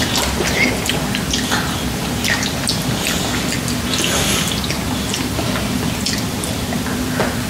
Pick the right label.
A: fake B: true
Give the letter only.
B